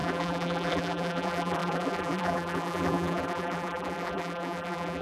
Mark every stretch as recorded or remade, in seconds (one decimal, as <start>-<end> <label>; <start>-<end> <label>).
0.0-5.0 remade